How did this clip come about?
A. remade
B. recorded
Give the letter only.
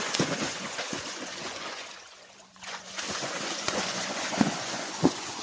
A